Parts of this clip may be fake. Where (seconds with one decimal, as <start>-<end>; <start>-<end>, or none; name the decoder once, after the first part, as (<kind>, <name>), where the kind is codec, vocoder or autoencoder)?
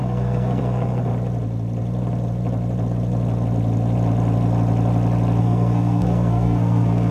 0.0-1.1 (codec, SNAC); 5.4-7.1